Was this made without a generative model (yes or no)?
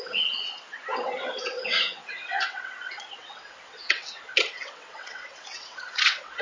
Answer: no